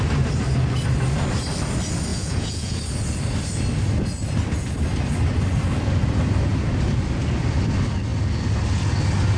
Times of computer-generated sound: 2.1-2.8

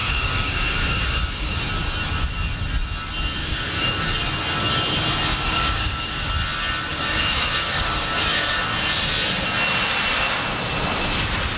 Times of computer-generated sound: 0.0-1.6; 3.4-4.2; 5.3-6.3; 6.9-8.6